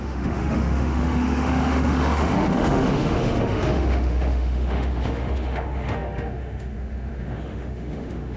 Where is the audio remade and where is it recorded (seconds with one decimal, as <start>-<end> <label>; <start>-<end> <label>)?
0.0-8.4 remade